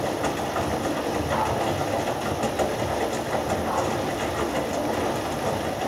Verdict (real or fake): real